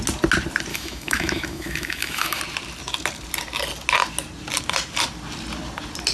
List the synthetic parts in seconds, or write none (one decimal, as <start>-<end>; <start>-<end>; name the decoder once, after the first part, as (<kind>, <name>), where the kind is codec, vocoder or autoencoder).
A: 0.7-2.4 (autoencoder, DAC-VAE)